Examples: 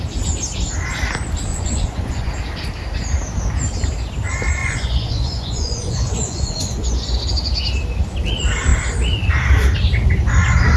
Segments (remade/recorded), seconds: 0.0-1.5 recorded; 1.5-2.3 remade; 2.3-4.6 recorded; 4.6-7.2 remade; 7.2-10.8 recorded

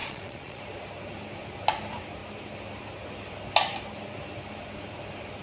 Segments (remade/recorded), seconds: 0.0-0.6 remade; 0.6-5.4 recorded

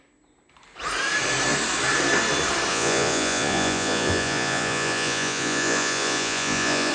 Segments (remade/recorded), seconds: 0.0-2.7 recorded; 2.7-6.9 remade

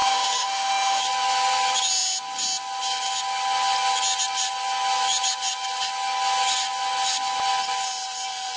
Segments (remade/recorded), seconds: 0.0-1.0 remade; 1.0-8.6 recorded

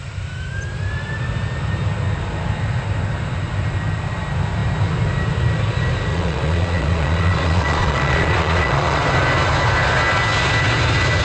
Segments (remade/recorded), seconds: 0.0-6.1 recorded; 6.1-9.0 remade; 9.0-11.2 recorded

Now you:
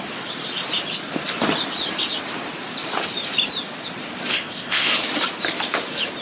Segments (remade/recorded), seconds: 0.0-4.3 recorded; 4.3-4.9 remade; 4.9-6.2 recorded

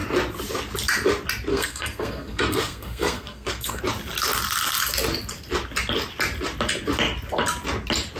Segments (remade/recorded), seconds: 0.0-1.5 recorded; 1.5-3.8 remade; 3.8-8.2 recorded